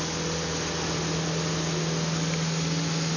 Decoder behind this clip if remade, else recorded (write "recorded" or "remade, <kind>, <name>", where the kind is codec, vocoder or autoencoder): recorded